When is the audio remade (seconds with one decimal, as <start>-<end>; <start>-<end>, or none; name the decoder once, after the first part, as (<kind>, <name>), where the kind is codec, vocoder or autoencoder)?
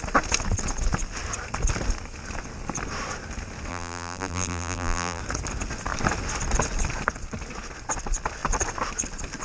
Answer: 3.7-5.2 (vocoder, BigVGAN v2)